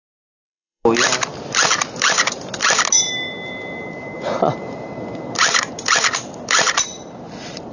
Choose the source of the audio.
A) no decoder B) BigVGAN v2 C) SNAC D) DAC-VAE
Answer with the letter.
B